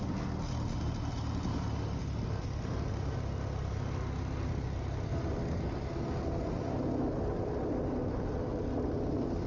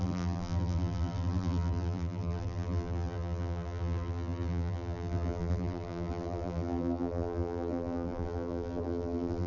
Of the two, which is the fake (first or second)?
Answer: second